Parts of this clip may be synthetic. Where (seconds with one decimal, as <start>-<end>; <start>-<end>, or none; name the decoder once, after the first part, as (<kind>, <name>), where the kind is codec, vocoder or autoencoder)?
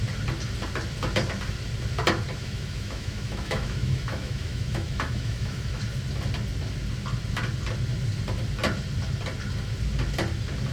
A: 2.4-5.8 (autoencoder, DAC-VAE)